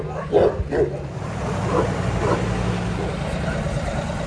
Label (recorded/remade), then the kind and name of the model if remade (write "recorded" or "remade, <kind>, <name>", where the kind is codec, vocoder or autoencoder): remade, vocoder, BigVGAN v2